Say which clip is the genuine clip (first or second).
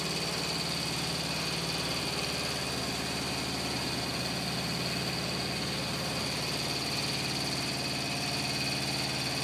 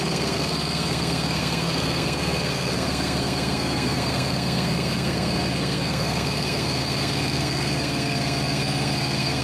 first